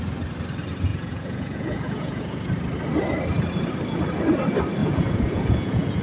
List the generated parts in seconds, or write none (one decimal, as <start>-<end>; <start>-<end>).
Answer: 0.9-2.5; 4.8-6.0